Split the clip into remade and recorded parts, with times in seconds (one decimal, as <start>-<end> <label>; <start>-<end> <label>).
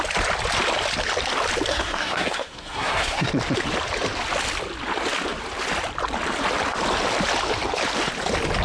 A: 0.0-1.7 recorded; 1.7-3.3 remade; 3.3-8.6 recorded